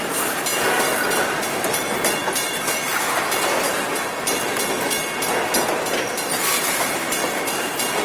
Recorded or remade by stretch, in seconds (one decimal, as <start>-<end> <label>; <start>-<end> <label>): 0.0-0.5 remade; 0.5-2.1 recorded; 2.1-2.9 remade; 2.9-5.9 recorded; 5.9-8.0 remade